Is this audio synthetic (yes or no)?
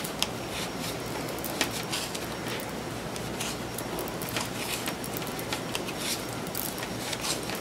no